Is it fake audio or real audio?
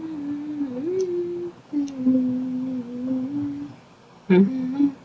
real